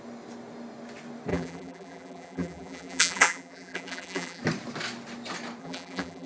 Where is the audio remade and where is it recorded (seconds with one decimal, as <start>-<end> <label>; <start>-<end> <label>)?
0.0-1.3 recorded; 1.3-4.4 remade; 4.4-5.6 recorded; 5.6-6.3 remade

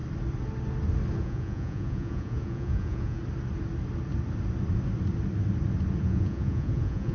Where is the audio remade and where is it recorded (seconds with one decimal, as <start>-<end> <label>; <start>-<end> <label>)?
0.0-1.2 recorded; 1.2-3.2 remade; 3.2-6.0 recorded; 6.0-7.1 remade

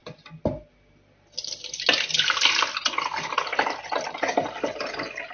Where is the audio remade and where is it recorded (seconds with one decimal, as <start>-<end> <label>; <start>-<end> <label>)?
0.0-5.3 recorded

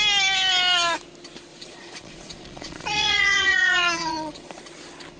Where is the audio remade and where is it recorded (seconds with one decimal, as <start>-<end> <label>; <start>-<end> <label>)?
0.0-1.5 recorded; 1.5-4.6 remade; 4.6-5.2 recorded

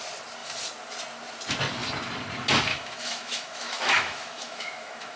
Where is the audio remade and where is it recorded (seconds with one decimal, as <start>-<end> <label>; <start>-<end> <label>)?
0.0-2.7 recorded; 2.7-5.2 remade

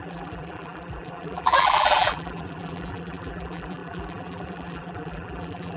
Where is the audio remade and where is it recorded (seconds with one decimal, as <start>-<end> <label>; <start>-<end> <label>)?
0.0-5.8 remade

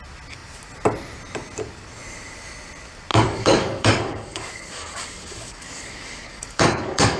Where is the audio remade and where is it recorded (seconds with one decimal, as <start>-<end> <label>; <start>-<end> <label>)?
0.0-3.1 recorded; 3.1-7.2 remade